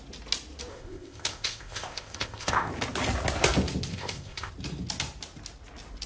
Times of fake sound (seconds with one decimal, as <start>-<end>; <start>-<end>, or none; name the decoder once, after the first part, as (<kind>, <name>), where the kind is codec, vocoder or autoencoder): 0.7-2.7 (codec, ZipCodec); 3.9-4.5